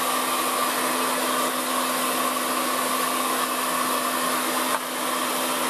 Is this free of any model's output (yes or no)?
yes